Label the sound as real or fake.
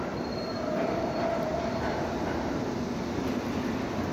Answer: real